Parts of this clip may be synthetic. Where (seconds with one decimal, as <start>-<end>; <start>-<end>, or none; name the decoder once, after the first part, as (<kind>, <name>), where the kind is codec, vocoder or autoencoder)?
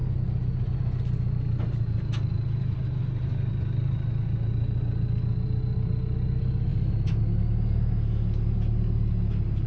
6.7-7.2 (vocoder, BigVGAN v2)